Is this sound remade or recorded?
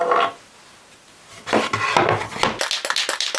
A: recorded